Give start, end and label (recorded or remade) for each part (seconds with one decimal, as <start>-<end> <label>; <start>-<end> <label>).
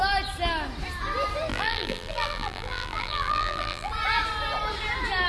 0.0-1.5 recorded; 1.5-3.9 remade; 3.9-5.3 recorded